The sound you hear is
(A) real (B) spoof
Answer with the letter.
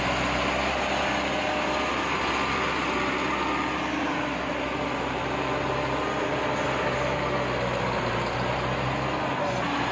A